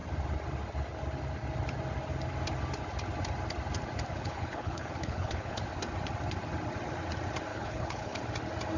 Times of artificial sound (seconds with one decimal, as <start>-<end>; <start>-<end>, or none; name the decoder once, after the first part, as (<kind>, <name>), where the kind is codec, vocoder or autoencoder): 4.1-5.6 (codec, HILCodec); 7.5-8.2